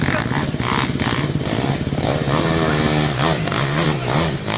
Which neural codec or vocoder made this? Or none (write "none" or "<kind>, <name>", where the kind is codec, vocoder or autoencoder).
none